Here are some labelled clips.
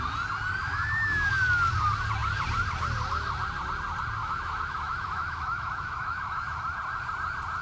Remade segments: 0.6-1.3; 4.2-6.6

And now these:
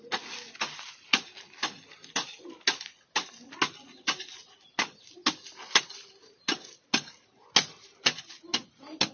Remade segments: none

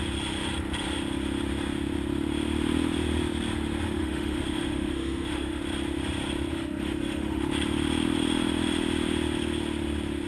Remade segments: 4.0-5.6; 6.5-7.4

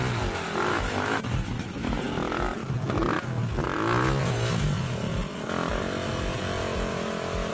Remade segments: 0.7-2.0; 6.9-7.5